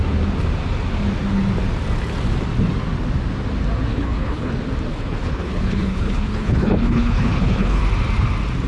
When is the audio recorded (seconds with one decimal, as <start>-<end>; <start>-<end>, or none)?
0.0-3.9; 4.5-4.9; 7.8-8.7